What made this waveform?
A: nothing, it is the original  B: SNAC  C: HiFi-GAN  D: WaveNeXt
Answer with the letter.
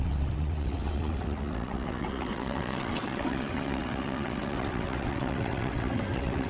D